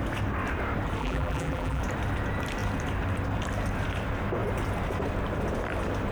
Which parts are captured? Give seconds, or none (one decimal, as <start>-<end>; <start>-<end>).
0.0-1.0; 1.8-6.1